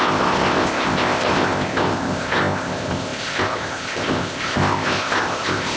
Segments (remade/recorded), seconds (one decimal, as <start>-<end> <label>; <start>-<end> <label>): 0.0-5.8 remade